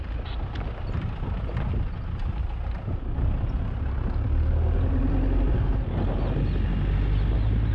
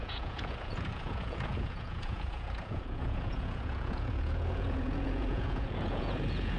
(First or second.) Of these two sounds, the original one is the first